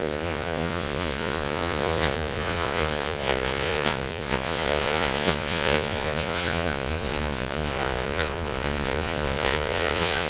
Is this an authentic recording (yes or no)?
no